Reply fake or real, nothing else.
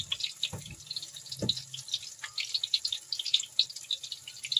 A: real